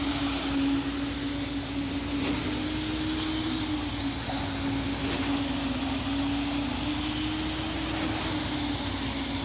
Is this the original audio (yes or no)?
yes